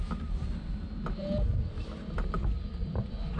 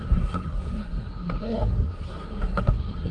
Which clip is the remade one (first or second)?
second